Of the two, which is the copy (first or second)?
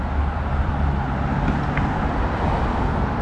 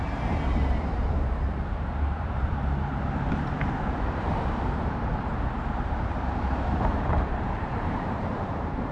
second